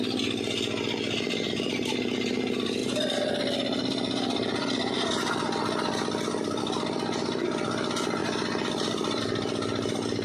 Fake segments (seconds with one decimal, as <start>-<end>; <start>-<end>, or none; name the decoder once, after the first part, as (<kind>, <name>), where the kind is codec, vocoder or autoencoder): 0.0-10.2 (vocoder, BigVGAN v2)